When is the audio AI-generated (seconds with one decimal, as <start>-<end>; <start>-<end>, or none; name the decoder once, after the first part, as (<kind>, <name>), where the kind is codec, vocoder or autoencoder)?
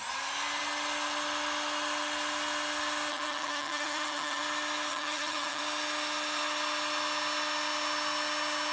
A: 3.1-4.4 (vocoder, HiFi-GAN); 4.9-5.6